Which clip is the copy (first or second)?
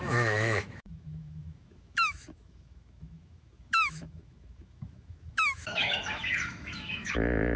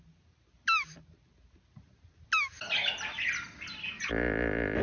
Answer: first